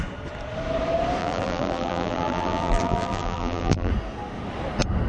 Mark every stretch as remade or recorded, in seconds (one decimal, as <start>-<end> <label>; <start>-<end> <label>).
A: 0.0-1.2 recorded; 1.2-3.9 remade; 3.9-5.1 recorded